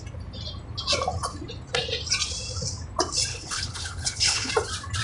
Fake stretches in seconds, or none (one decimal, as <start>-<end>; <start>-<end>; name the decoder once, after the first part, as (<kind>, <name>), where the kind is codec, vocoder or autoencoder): 3.3-4.5 (codec, HILCodec)